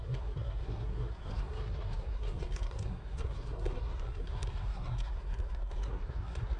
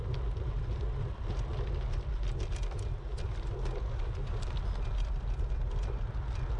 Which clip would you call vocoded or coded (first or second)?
first